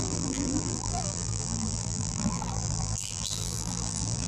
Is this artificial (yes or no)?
yes